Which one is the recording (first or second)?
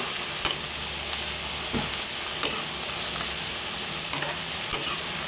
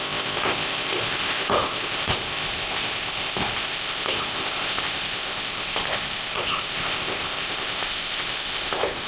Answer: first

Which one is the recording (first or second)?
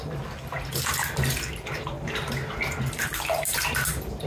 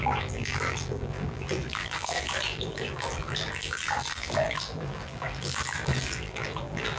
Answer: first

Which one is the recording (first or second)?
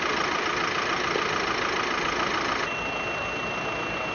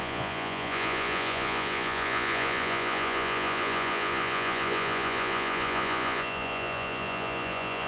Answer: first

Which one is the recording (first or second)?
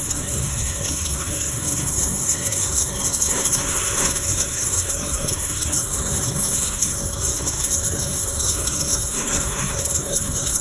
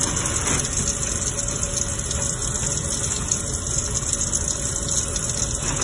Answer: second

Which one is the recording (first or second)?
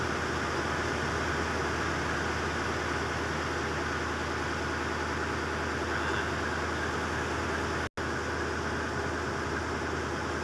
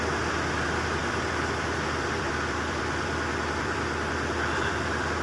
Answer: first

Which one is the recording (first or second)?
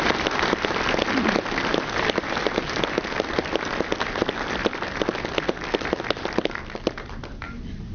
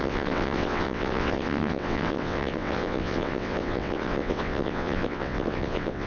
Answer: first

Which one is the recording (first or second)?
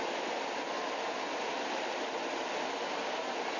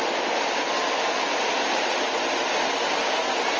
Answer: second